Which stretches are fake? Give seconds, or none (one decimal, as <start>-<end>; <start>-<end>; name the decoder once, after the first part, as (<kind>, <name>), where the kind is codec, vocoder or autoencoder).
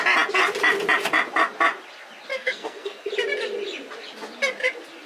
2.3-3.1 (codec, SNAC)